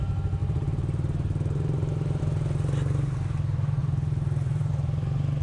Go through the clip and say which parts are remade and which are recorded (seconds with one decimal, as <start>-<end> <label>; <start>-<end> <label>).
0.0-0.4 recorded; 0.4-2.2 remade; 2.2-3.8 recorded; 3.8-4.7 remade; 4.7-5.4 recorded